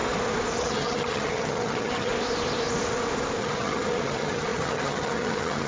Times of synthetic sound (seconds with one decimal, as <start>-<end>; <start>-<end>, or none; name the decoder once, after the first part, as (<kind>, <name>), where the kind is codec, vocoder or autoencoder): 0.6-2.1 (vocoder, HiFi-GAN); 3.4-5.7

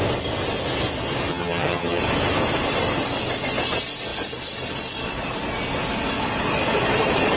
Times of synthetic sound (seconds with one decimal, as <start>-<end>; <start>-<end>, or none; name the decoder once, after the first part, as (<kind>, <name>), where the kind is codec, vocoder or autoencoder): 1.3-2.0 (vocoder, HiFi-GAN)

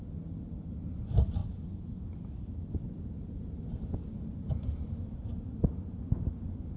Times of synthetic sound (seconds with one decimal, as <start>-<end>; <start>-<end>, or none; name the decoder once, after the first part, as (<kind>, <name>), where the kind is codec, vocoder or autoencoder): none

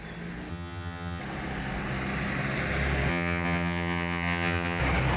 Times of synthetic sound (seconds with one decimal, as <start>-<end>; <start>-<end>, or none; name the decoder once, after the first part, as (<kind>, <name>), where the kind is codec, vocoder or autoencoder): 0.5-1.2 (vocoder, HiFi-GAN); 3.1-4.8

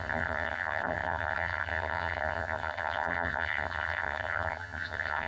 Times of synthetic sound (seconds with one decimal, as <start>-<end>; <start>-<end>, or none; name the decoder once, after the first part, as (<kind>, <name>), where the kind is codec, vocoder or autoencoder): 0.0-5.3 (vocoder, HiFi-GAN)